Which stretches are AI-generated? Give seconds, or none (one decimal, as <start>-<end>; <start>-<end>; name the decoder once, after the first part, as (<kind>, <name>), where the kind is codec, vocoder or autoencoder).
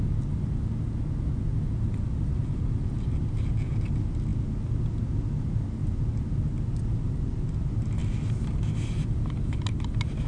none